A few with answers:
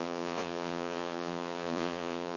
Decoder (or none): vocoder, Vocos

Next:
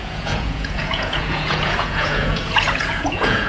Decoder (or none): vocoder, Vocos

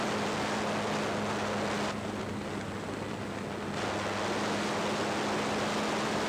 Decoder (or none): none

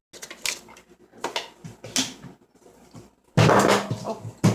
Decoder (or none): none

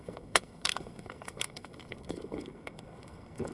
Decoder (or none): codec, SNAC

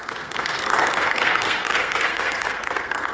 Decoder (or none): codec, SNAC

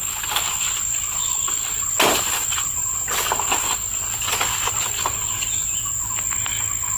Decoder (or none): none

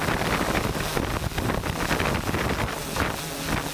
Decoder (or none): none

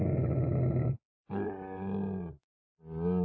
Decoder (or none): none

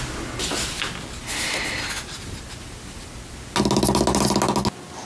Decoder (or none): none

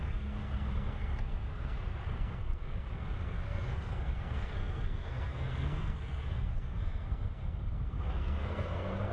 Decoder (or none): codec, SNAC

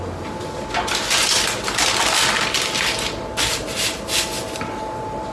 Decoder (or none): none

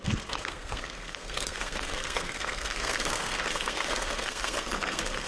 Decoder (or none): codec, SNAC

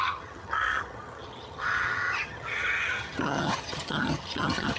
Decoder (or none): vocoder, HiFi-GAN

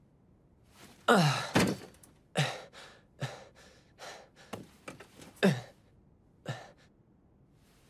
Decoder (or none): none